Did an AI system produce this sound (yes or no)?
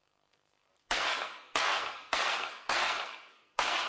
yes